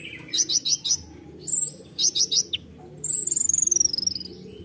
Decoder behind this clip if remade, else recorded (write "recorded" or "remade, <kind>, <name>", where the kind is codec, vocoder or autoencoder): recorded